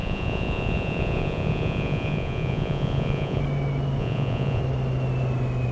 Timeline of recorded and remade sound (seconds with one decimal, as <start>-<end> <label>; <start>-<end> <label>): 0.0-3.4 remade; 3.4-4.0 recorded; 4.0-4.6 remade; 4.6-5.7 recorded